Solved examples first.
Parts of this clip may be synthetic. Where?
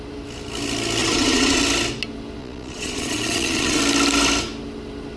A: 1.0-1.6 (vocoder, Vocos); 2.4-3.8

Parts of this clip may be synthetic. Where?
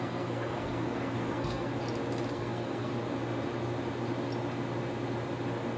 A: 0.0-1.7 (codec, SNAC); 2.3-2.9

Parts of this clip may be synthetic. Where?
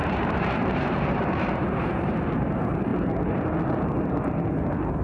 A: 0.0-2.2 (vocoder, BigVGAN v2); 2.9-3.5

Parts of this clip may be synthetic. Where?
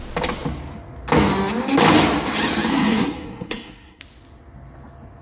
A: 2.7-4.0 (codec, SNAC)